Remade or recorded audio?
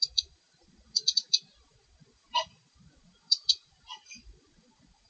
remade